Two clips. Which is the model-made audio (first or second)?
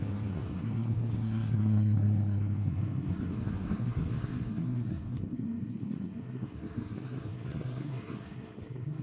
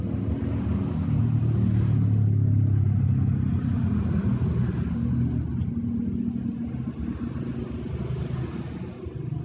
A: first